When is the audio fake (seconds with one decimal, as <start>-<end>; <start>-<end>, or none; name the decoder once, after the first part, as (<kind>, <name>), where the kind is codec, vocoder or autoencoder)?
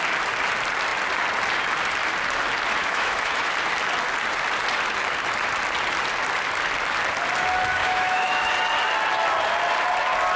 2.8-3.5 (autoencoder, DAC-VAE); 7.8-8.5